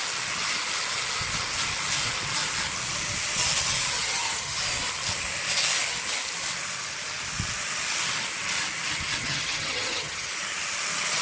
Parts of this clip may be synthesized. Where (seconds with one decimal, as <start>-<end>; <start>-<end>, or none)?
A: 4.0-4.6; 9.2-10.3